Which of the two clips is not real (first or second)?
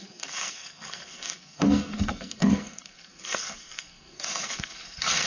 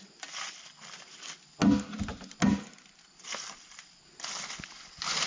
first